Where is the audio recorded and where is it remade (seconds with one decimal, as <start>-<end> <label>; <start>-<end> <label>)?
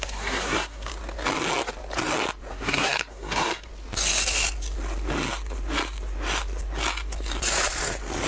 0.0-0.9 remade; 0.9-2.5 recorded; 2.5-3.7 remade; 3.7-8.3 recorded